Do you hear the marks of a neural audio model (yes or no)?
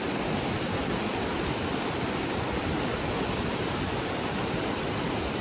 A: yes